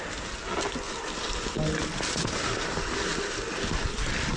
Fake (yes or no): no